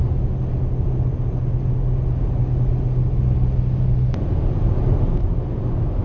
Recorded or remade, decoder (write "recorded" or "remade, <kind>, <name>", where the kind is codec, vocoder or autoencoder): recorded